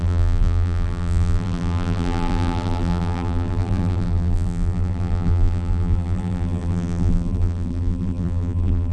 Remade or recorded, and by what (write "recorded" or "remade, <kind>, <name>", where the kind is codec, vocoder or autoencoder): remade, vocoder, BigVGAN v2